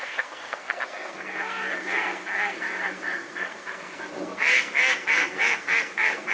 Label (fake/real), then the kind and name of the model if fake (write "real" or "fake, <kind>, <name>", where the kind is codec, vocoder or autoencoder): fake, codec, SNAC